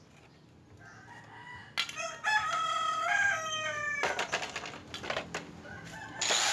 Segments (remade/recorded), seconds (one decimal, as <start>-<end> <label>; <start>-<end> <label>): 0.0-6.5 recorded